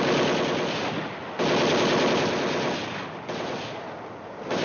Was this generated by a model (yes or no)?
no